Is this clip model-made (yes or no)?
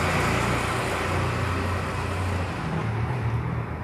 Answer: no